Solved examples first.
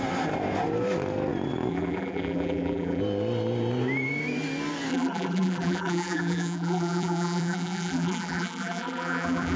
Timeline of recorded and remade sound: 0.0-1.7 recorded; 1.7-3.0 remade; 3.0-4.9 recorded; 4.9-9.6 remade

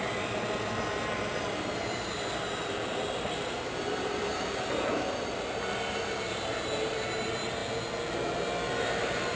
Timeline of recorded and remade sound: 0.0-7.6 remade; 7.6-8.8 recorded; 8.8-9.4 remade